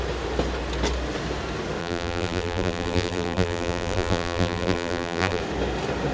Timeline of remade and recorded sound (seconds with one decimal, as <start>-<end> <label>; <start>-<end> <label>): 0.0-1.8 recorded; 1.8-5.4 remade; 5.4-6.1 recorded